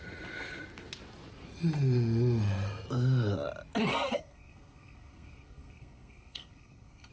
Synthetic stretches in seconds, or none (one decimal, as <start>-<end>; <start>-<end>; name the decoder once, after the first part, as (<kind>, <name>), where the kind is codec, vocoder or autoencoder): 3.9-7.1 (codec, SNAC)